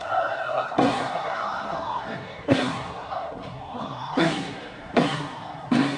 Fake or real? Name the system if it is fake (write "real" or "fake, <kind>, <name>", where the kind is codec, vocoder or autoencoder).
fake, codec, SNAC